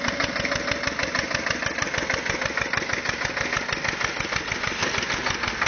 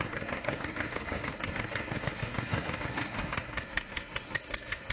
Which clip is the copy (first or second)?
second